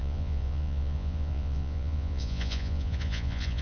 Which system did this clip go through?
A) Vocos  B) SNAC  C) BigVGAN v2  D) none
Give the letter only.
A